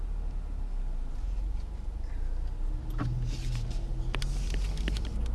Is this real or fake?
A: real